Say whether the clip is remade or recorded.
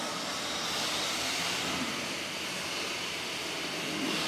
recorded